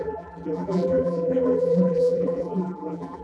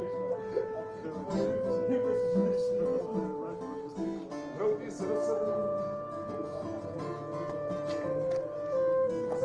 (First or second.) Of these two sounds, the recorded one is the second